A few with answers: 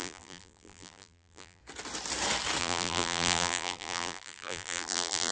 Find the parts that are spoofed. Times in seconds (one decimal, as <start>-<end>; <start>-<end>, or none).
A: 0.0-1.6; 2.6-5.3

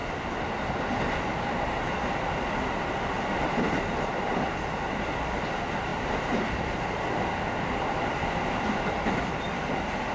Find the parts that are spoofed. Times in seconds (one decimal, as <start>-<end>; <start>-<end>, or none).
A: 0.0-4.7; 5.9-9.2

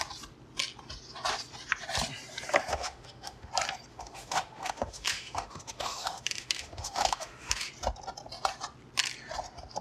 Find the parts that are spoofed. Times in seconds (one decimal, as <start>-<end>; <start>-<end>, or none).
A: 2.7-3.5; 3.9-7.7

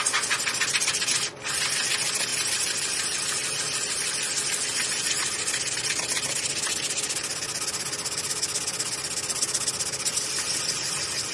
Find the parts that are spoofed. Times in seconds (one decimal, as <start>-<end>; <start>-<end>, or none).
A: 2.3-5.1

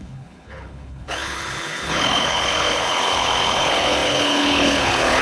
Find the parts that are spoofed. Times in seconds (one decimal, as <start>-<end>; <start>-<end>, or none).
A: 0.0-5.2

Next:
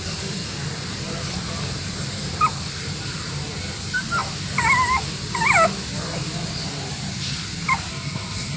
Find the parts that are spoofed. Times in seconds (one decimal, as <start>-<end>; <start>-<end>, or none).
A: 7.9-8.6